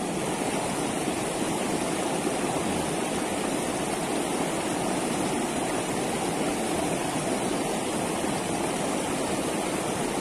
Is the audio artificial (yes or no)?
no